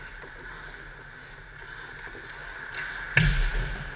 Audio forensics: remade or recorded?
recorded